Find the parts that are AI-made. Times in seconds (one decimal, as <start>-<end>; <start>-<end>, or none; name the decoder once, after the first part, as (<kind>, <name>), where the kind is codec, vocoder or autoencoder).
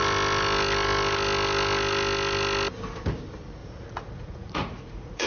3.6-5.3 (vocoder, Vocos)